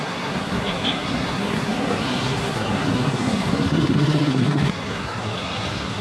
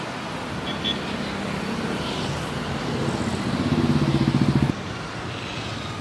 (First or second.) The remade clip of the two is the first